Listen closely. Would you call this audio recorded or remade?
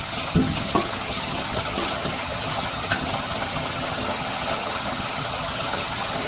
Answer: remade